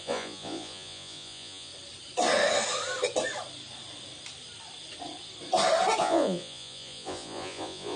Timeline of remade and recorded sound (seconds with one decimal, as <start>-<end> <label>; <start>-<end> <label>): 0.0-1.7 remade; 1.7-6.0 recorded; 6.0-8.0 remade